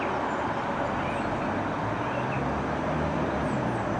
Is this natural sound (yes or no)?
yes